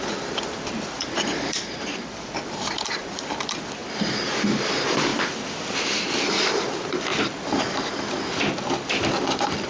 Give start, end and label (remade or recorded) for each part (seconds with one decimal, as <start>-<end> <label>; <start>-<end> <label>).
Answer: 0.0-7.1 remade; 7.1-8.7 recorded; 8.7-9.7 remade